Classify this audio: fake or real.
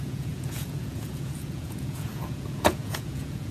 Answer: fake